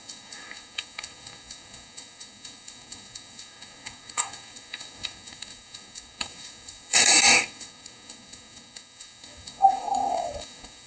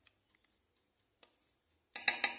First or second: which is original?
second